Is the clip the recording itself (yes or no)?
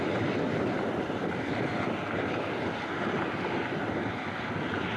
yes